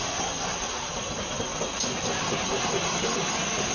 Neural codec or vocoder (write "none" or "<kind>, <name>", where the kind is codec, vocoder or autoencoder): none